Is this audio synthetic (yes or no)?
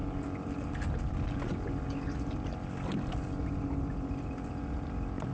no